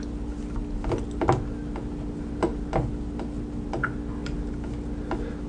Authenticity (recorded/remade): recorded